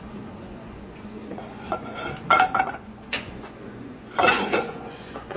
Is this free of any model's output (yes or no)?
no